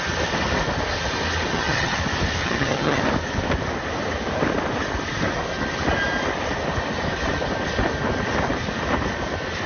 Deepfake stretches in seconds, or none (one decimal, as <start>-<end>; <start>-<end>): 1.5-2.0; 2.4-3.0